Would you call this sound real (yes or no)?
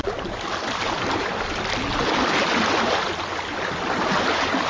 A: yes